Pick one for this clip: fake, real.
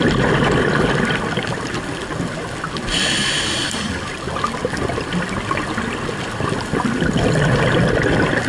real